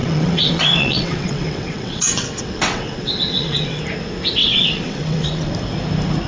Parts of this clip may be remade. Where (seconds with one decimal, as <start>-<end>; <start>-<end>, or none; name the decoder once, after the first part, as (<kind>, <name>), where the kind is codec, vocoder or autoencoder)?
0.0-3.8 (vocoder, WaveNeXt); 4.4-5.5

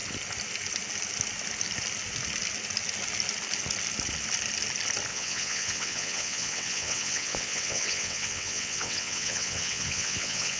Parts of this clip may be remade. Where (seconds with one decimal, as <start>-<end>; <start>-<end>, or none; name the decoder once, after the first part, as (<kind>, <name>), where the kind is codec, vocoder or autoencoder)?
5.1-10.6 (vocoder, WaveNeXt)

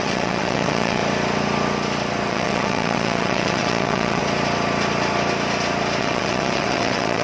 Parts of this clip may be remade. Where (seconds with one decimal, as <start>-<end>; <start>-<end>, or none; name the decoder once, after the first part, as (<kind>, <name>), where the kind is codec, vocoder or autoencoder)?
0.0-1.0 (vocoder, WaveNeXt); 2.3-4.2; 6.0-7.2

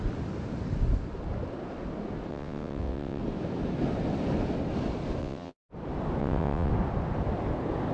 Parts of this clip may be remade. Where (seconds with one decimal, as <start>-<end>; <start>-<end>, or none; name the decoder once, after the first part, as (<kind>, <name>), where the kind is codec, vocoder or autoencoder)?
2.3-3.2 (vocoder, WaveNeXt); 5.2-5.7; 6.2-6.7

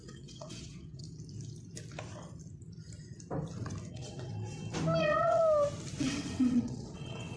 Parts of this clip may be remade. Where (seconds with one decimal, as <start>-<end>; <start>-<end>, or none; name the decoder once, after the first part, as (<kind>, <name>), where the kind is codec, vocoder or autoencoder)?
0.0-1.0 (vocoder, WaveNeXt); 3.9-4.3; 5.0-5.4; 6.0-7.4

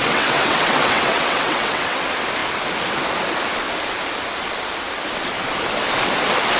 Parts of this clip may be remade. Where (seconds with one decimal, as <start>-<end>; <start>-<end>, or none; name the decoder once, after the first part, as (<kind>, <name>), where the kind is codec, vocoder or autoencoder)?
0.0-2.0 (vocoder, WaveNeXt)

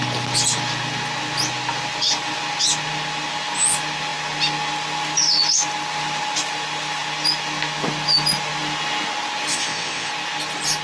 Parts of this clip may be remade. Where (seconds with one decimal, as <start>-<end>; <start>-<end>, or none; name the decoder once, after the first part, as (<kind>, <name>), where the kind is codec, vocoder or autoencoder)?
9.5-10.1 (vocoder, WaveNeXt)